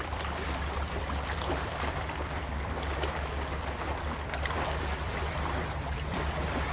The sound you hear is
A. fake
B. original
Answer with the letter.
A